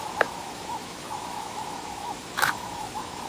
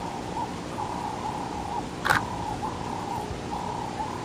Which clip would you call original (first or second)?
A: second